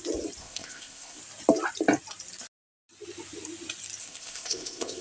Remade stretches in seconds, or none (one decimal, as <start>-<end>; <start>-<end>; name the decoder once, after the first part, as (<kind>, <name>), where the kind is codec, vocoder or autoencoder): 0.4-1.2 (codec, ZipCodec); 4.0-5.0